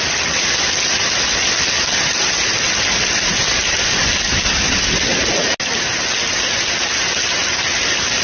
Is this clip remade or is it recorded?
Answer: recorded